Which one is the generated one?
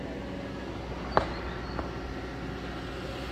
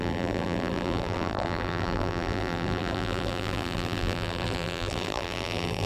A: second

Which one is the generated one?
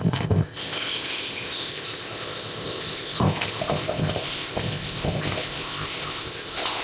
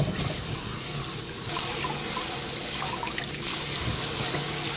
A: first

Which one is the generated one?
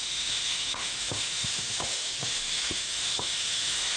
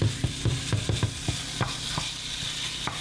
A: first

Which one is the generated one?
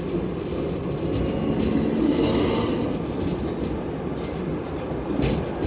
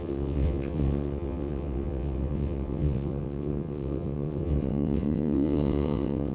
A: second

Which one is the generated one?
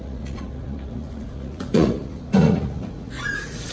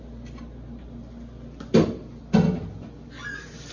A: first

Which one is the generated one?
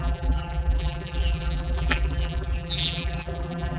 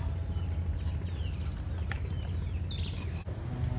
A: first